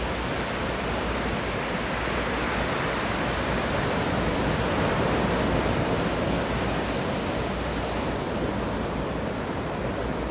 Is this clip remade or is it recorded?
recorded